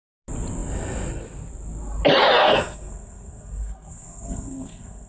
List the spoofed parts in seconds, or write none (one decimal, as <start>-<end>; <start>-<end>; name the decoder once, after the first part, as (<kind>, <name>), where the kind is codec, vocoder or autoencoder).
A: 2.4-5.1 (codec, SNAC)